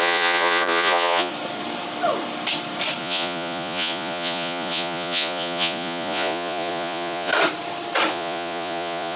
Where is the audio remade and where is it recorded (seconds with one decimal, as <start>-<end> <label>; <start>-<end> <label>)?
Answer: 0.0-1.3 remade; 1.3-3.0 recorded; 3.0-7.3 remade; 7.3-8.1 recorded; 8.1-9.2 remade